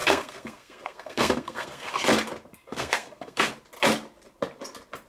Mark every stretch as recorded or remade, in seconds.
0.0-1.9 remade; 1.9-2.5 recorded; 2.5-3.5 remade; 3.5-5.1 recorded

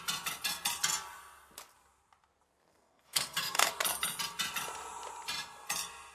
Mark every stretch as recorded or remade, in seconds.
0.0-2.7 recorded; 2.7-3.7 remade; 3.7-6.1 recorded

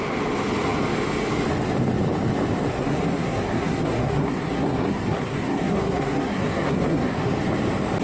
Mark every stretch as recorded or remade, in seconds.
0.0-2.7 recorded; 2.7-7.3 remade; 7.3-8.0 recorded

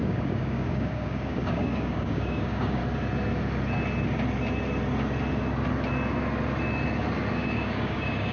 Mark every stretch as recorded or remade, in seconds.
0.0-2.8 remade; 2.8-7.3 recorded; 7.3-8.3 remade

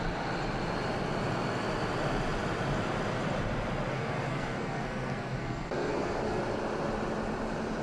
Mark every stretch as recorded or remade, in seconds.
0.0-3.9 recorded; 3.9-6.4 remade; 6.4-7.8 recorded